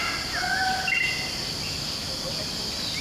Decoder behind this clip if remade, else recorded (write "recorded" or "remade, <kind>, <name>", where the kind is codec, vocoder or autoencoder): recorded